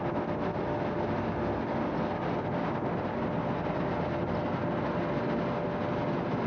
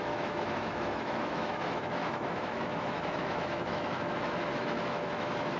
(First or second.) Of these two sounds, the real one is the first